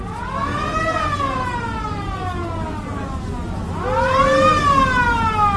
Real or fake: real